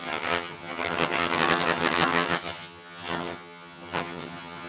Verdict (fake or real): fake